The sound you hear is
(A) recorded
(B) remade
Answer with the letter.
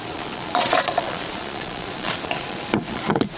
B